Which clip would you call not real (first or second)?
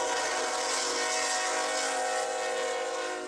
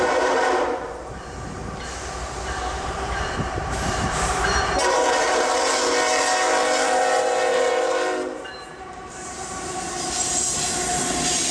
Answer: second